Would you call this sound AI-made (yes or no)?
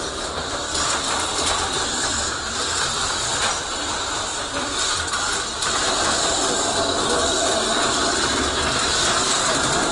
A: yes